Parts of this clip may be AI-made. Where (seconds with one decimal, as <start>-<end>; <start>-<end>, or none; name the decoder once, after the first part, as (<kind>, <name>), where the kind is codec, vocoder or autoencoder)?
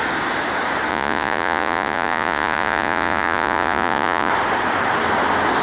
0.9-4.3 (vocoder, Vocos)